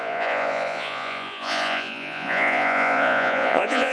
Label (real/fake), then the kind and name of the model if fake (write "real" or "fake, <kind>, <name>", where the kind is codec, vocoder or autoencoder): fake, vocoder, Vocos